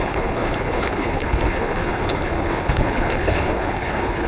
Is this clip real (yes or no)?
no